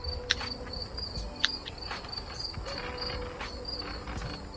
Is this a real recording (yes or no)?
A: yes